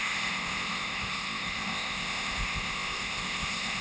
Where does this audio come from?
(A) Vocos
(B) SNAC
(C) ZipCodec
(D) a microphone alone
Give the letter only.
C